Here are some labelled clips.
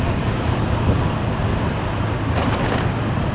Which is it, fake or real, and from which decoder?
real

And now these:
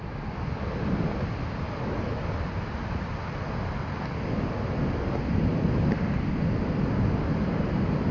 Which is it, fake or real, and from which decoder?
real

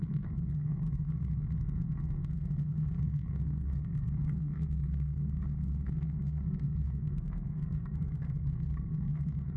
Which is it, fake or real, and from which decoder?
fake, codec, SNAC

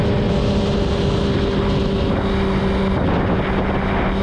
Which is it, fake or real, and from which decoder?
real